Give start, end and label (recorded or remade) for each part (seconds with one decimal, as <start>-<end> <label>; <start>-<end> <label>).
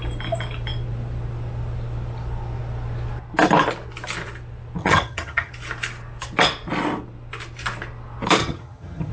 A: 0.0-4.8 recorded; 4.8-5.5 remade; 5.5-8.4 recorded; 8.4-9.1 remade